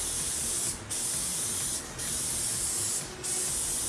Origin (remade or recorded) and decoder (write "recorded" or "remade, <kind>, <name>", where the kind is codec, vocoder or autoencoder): recorded